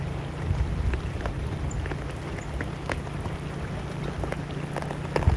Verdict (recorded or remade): recorded